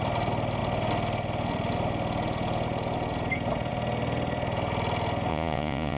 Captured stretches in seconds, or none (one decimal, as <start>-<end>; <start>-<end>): 0.0-5.3